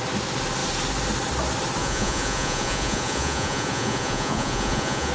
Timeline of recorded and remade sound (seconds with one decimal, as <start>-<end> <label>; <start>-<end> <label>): 0.0-1.8 recorded; 1.8-5.1 remade